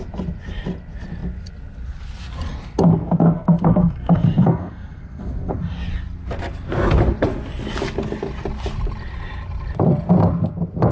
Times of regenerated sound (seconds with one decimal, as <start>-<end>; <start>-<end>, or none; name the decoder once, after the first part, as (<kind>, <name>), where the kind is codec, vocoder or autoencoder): 3.0-5.5 (codec, SNAC)